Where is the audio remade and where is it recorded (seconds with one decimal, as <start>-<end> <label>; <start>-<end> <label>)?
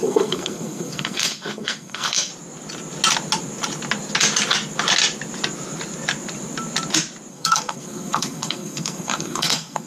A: 0.0-2.3 remade; 2.3-7.3 recorded; 7.3-9.9 remade